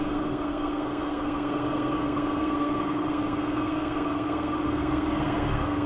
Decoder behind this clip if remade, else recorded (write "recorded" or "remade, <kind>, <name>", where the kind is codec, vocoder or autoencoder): remade, codec, SNAC